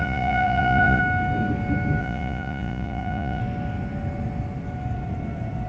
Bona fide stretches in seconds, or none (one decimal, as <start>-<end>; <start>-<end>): 1.0-2.0; 3.4-5.7